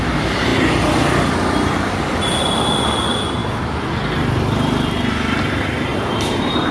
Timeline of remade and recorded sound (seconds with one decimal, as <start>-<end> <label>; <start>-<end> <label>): 0.0-5.9 recorded; 5.9-6.7 remade